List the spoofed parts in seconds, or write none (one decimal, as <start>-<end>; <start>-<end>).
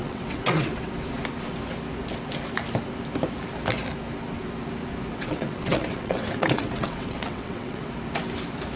0.0-0.9; 5.1-7.9